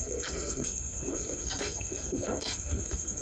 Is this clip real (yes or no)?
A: no